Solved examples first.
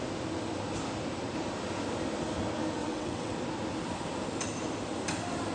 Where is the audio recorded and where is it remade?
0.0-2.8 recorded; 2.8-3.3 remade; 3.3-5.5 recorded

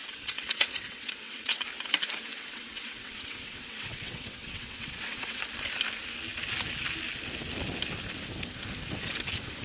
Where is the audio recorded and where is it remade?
0.0-1.6 remade; 1.6-2.3 recorded; 2.3-5.4 remade; 5.4-9.6 recorded

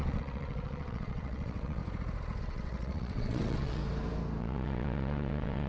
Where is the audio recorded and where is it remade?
0.0-1.8 remade; 1.8-2.4 recorded; 2.4-3.8 remade; 3.8-4.4 recorded; 4.4-5.7 remade

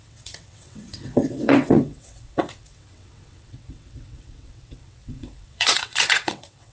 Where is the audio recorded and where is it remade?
0.0-6.7 remade

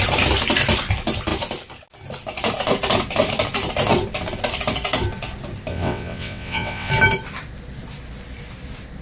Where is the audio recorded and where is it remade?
0.0-5.7 recorded; 5.7-6.9 remade; 6.9-9.0 recorded

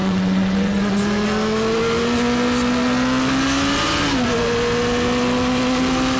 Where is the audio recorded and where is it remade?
0.0-1.0 remade; 1.0-6.2 recorded